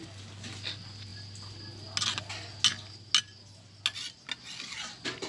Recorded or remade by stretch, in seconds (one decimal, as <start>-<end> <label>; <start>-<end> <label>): 0.0-5.3 recorded